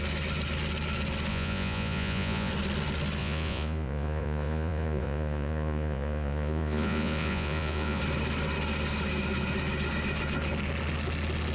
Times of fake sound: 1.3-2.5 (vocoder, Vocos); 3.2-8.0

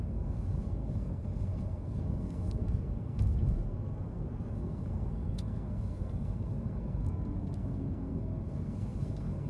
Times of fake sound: 0.0-9.5 (codec, SNAC)